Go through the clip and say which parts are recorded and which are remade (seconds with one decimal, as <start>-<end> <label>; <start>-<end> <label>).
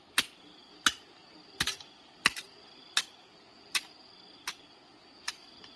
0.0-5.8 recorded